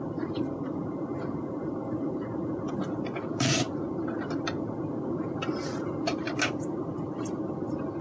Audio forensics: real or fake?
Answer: fake